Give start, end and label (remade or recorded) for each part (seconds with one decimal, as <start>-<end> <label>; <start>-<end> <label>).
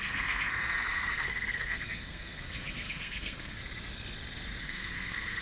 0.0-3.6 remade; 3.6-4.6 recorded; 4.6-5.4 remade